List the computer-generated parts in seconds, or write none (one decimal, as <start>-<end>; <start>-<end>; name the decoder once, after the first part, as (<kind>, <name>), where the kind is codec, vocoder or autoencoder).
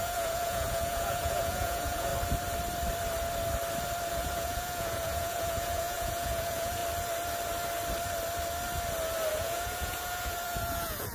0.0-2.1 (vocoder, Vocos); 4.1-6.8; 9.3-11.1